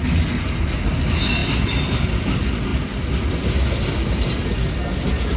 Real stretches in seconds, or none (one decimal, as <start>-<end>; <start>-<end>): 0.0-5.4